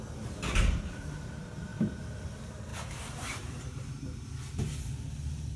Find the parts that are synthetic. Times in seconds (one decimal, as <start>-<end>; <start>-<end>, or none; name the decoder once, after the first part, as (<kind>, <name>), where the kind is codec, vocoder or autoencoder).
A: 1.7-2.3 (vocoder, BigVGAN v2); 2.7-4.3